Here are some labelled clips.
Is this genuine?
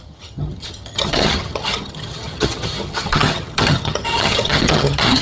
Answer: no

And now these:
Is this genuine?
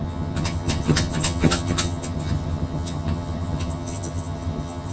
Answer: no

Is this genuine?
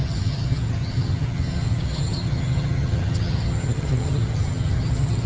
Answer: no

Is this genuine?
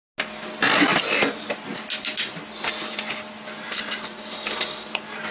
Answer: yes